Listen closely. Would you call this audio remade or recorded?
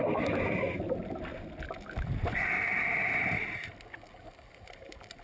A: recorded